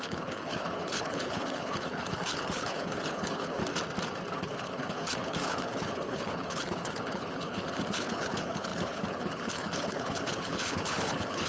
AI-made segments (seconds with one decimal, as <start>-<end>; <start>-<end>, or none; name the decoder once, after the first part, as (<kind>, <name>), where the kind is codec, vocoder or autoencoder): 0.0-3.6 (codec, HILCodec); 4.3-11.5

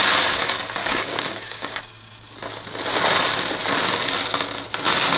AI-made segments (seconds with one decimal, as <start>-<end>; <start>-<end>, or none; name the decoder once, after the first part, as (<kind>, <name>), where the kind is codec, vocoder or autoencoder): 0.8-1.9 (codec, DAC)

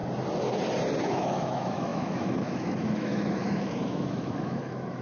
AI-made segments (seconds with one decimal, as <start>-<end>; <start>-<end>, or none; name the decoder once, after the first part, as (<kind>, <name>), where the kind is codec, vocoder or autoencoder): 1.0-5.0 (autoencoder, DAC-VAE)

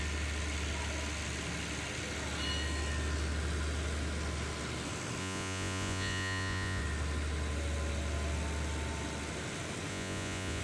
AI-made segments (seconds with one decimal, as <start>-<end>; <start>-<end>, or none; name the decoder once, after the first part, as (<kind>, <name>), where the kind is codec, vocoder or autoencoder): 5.2-6.8 (vocoder, Vocos); 9.9-10.6

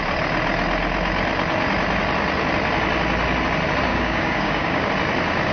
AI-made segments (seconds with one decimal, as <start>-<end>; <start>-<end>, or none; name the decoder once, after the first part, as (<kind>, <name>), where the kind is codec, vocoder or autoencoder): 3.9-4.9 (codec, DAC)

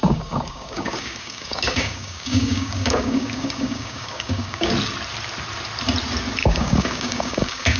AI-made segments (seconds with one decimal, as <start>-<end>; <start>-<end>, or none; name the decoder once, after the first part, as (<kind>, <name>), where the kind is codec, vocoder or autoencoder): 0.0-4.7 (codec, DAC); 6.4-7.8

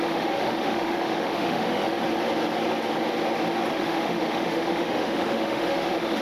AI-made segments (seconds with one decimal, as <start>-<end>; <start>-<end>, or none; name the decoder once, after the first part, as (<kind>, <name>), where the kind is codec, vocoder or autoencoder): 0.0-2.0 (autoencoder, DAC-VAE); 3.7-6.2